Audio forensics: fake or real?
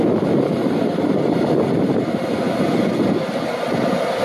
real